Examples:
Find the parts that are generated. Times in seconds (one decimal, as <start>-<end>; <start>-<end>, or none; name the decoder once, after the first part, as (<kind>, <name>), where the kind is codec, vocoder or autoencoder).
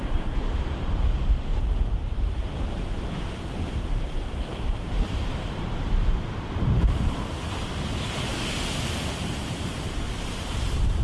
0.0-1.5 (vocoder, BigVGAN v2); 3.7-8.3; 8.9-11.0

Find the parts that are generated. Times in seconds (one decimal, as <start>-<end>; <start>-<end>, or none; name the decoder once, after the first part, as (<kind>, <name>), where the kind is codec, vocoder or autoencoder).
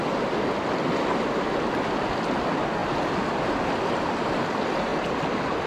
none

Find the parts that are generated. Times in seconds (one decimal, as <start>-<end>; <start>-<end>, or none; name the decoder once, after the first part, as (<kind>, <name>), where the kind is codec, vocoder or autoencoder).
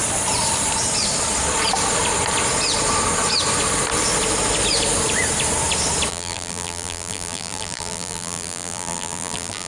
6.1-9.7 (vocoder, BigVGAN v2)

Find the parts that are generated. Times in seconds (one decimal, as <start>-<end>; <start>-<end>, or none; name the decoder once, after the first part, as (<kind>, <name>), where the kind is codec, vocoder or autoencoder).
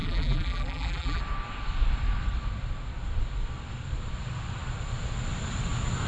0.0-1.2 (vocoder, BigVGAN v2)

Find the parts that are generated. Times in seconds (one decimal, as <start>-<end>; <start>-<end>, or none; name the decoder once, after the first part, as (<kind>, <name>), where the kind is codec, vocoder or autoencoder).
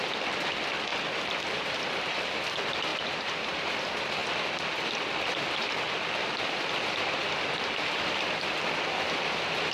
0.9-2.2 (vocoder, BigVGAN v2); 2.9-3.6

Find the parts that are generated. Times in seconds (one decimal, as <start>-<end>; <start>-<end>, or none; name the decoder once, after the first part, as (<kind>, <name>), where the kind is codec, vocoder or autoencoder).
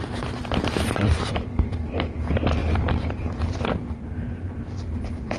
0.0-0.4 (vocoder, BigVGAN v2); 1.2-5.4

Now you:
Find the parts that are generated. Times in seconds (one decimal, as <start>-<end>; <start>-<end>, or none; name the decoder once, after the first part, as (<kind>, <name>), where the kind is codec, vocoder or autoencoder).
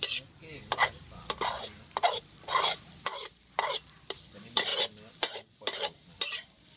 0.0-4.7 (vocoder, BigVGAN v2); 5.8-6.8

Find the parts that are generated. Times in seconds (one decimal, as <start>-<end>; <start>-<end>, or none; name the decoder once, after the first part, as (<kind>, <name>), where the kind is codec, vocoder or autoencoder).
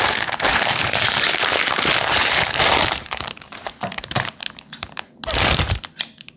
0.5-4.3 (vocoder, BigVGAN v2)